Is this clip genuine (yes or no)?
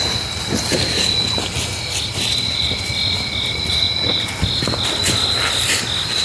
yes